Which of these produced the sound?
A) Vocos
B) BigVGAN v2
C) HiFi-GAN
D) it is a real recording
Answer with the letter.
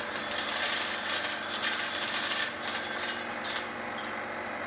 D